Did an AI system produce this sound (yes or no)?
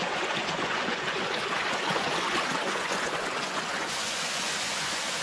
yes